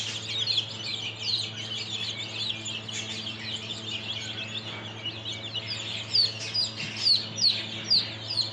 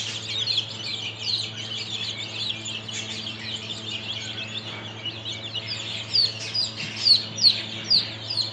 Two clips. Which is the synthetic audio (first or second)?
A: second